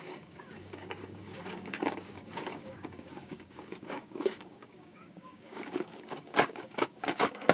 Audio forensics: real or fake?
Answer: fake